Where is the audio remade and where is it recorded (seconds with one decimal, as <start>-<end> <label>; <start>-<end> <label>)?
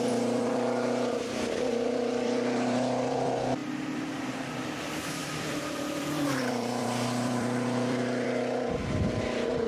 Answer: 0.0-3.6 remade; 3.6-4.2 recorded; 4.2-9.7 remade